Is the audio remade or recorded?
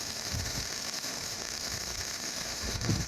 remade